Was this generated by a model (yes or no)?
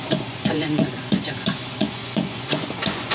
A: yes